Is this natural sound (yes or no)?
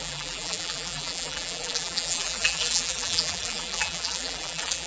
no